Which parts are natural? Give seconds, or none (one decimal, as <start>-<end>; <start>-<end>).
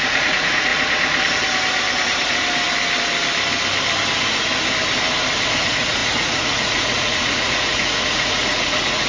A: 0.7-5.6